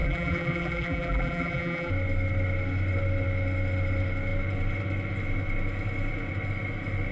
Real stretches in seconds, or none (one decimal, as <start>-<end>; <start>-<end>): 1.9-7.1